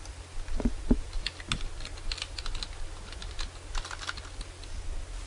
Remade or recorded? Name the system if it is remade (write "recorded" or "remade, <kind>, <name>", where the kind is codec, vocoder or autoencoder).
recorded